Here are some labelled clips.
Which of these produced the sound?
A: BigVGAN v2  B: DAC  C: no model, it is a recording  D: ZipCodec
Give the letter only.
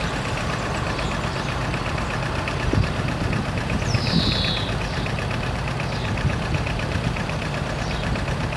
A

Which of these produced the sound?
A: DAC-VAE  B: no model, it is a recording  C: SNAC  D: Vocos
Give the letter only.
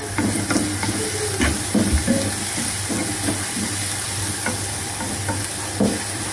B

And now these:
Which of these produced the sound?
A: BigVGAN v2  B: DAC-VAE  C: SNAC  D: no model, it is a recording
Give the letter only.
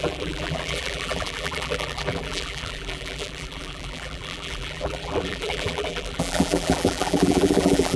A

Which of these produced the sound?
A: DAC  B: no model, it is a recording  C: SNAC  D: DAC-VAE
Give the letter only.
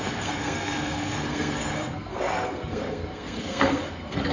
C